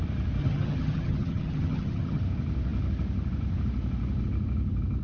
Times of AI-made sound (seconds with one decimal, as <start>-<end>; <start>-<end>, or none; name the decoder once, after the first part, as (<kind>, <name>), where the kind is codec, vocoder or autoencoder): 0.4-2.2 (vocoder, HiFi-GAN)